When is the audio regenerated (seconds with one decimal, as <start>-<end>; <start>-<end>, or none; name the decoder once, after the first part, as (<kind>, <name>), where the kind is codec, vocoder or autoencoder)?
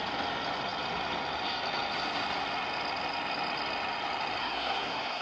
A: 4.4-5.2 (codec, SNAC)